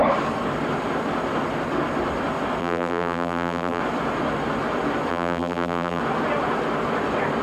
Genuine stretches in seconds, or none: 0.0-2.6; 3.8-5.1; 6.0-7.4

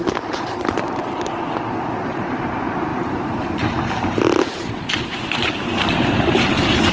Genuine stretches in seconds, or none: 0.0-2.4

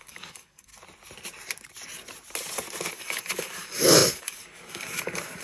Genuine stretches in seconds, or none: 0.7-2.9

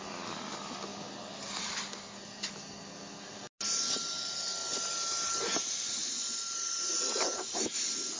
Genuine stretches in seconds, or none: 0.0-4.6; 6.4-8.2